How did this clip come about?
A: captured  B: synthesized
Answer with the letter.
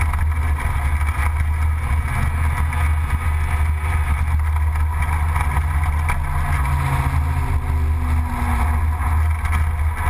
A